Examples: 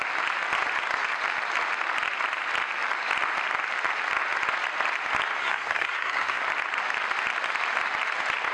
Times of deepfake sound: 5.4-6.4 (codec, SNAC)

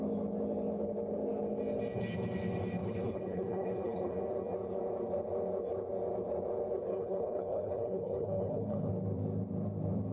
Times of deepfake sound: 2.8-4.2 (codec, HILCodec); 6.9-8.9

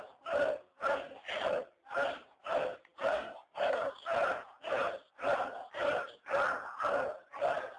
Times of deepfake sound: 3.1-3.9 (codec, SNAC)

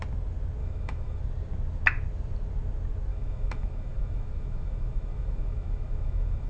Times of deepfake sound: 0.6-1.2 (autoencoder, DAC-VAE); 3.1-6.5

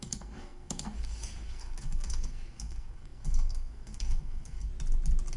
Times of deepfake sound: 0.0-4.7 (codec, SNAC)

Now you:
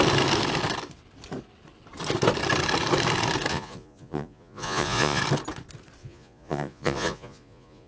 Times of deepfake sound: 3.5-5.2 (vocoder, Vocos); 6.0-7.9

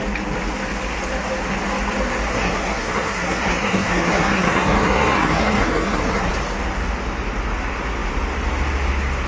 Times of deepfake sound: 2.3-6.3 (codec, SNAC)